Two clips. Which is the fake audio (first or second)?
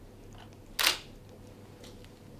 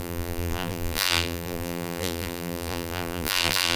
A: second